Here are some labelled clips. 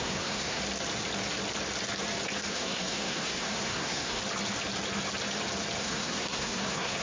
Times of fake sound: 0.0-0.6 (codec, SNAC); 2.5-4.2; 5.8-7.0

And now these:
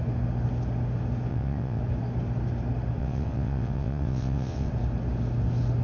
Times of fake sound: 1.3-1.8 (vocoder, WaveNeXt); 3.0-4.7

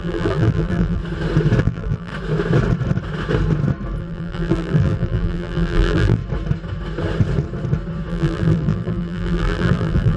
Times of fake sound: 0.0-1.0 (vocoder, BigVGAN v2); 1.6-2.1; 4.0-6.2; 8.1-10.2

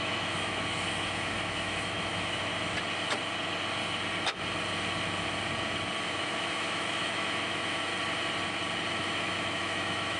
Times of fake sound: 0.0-2.5 (autoencoder, DAC-VAE); 6.1-7.9; 8.9-10.2

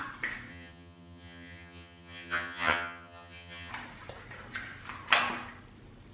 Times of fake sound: 0.5-3.7 (vocoder, HiFi-GAN)